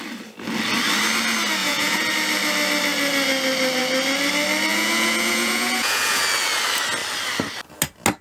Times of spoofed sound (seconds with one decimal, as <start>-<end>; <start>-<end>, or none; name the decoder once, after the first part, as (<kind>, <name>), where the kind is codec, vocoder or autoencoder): 1.6-2.1 (vocoder, Vocos); 4.7-6.2